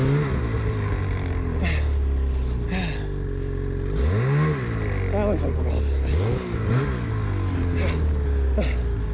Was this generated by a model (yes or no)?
no